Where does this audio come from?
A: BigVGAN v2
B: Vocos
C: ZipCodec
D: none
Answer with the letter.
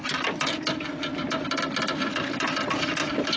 D